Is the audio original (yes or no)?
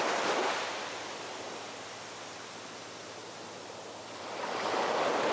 yes